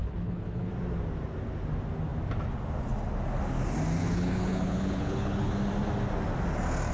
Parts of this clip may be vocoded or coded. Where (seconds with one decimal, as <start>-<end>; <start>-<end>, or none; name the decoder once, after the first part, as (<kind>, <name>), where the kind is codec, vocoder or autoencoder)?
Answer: 0.0-0.7 (codec, HILCodec); 4.0-5.5